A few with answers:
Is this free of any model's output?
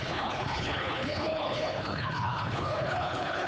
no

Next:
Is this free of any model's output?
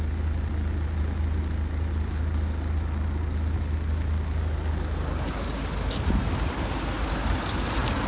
yes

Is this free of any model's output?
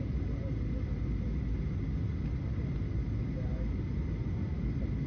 yes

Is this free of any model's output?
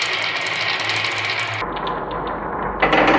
yes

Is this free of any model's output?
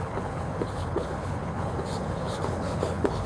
no